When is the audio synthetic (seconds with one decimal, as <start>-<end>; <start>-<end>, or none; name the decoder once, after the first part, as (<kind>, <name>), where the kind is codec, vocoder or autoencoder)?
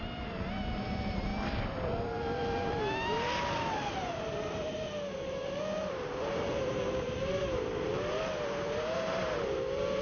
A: 0.0-1.3 (vocoder, BigVGAN v2); 4.5-5.4; 5.9-10.0